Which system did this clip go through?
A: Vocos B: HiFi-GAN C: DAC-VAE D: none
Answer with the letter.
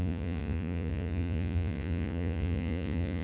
A